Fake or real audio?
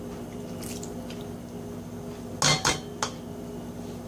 real